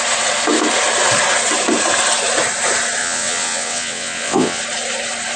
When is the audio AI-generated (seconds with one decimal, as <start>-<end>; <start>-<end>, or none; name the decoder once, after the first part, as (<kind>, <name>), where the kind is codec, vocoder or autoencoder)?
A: 3.0-4.6 (vocoder, WaveNeXt)